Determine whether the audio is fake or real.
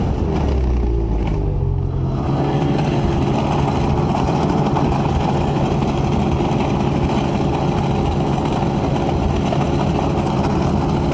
real